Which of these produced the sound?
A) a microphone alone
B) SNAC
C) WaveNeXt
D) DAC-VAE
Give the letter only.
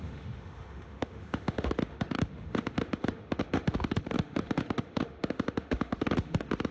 D